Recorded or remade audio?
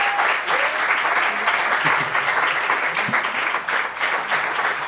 recorded